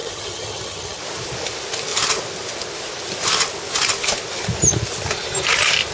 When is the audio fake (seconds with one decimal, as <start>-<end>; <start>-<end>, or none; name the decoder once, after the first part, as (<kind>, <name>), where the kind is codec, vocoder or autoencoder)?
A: 0.0-1.0 (vocoder, HiFi-GAN)